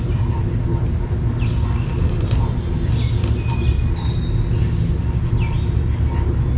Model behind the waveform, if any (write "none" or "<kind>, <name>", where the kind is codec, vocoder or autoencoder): none